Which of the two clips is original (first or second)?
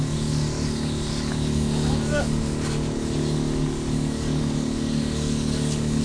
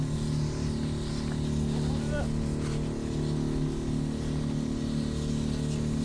second